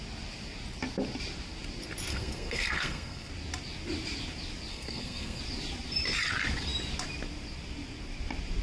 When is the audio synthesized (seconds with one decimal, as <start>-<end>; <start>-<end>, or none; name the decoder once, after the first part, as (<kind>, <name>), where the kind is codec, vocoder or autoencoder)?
2.1-3.3 (codec, SNAC); 4.7-5.4